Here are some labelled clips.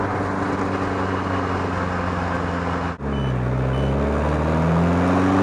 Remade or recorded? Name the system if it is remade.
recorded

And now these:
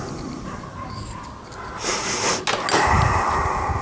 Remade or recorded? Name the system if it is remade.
recorded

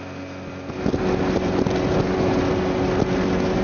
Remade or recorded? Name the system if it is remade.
recorded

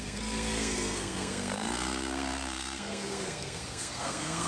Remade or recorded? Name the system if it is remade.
remade, codec, SNAC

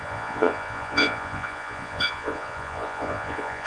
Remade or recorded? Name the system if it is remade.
remade, vocoder, Vocos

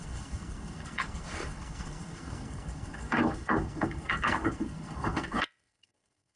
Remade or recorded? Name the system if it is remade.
remade, codec, SNAC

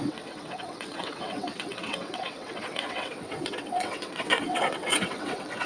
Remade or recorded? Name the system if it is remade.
remade, vocoder, WaveNeXt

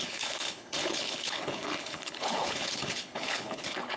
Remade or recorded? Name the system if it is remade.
remade, codec, HILCodec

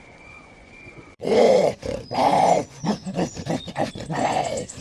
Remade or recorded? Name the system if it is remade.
remade, vocoder, Vocos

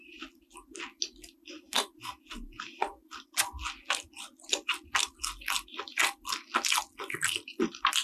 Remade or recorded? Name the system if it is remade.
recorded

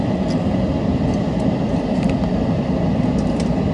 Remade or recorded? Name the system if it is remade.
remade, vocoder, BigVGAN v2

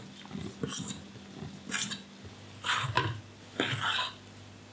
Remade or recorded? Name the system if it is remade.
recorded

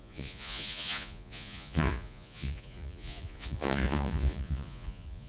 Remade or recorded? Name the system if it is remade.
remade, vocoder, Vocos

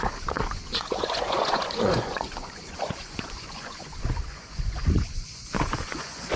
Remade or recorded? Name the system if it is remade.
remade, vocoder, Vocos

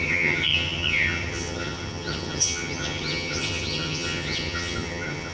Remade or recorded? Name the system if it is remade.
remade, vocoder, HiFi-GAN